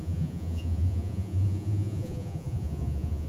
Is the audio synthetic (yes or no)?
yes